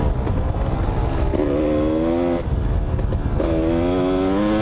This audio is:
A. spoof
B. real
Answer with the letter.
B